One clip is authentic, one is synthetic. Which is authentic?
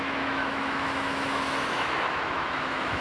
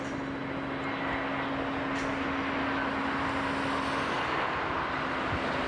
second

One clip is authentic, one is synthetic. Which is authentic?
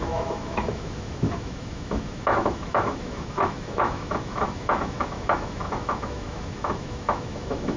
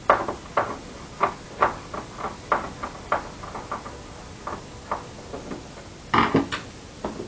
second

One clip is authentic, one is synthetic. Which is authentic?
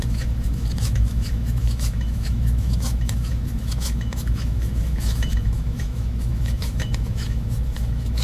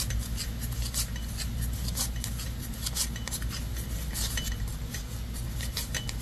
second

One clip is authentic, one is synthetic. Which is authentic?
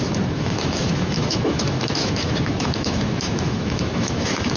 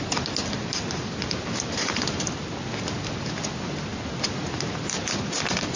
second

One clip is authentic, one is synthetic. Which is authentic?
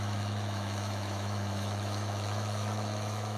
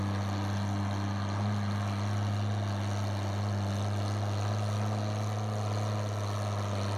second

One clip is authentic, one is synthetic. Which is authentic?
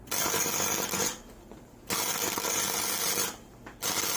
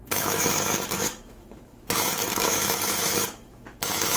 first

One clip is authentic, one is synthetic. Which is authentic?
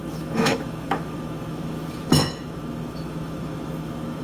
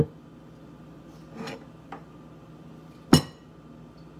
second